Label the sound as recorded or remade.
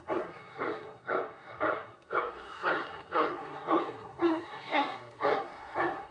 remade